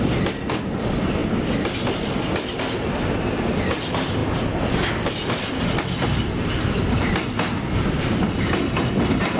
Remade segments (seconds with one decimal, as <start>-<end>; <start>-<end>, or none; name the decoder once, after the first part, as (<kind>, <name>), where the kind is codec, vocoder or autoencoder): none